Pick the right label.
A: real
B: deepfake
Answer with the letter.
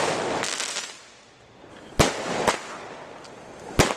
A